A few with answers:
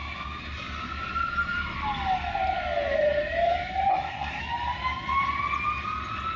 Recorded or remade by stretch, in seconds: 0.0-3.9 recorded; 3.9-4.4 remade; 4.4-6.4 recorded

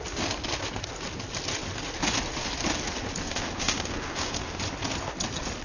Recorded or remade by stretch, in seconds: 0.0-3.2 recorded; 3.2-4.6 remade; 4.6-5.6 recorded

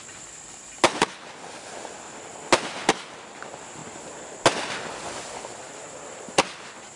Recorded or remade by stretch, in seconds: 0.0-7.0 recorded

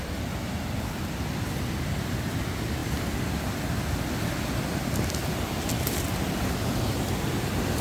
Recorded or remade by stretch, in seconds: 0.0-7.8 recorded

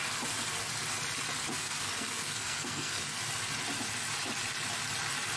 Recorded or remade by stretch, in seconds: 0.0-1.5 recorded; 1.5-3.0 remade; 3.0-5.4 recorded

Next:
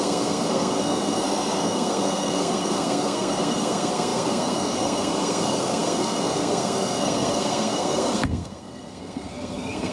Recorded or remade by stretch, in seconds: 0.0-9.9 remade